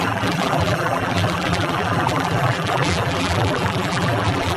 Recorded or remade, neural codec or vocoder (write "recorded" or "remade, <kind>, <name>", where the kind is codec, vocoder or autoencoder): remade, vocoder, BigVGAN v2